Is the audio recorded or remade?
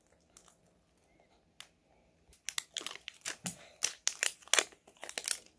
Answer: recorded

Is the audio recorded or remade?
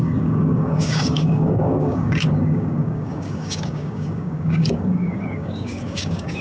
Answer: remade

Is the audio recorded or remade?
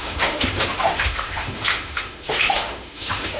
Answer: remade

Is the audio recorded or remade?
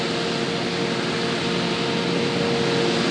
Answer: recorded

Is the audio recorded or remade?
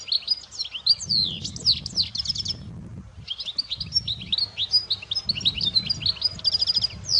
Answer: recorded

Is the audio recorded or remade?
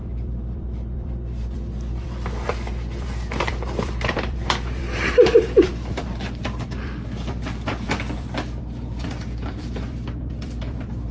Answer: remade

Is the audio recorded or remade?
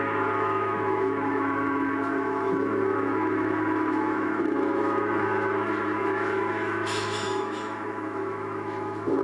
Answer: remade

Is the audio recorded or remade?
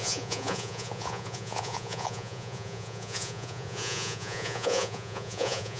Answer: remade